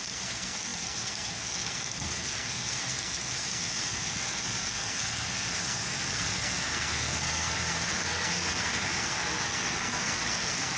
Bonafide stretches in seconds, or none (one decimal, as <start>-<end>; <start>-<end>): none